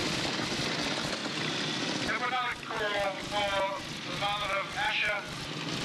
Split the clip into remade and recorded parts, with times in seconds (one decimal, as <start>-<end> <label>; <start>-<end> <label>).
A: 0.0-5.8 recorded